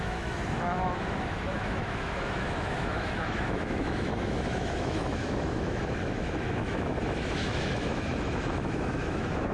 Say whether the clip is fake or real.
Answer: fake